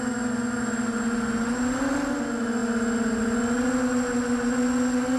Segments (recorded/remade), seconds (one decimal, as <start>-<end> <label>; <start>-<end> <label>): 0.0-5.2 recorded